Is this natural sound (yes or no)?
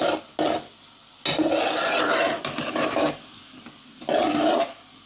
yes